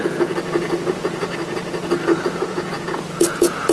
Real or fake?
fake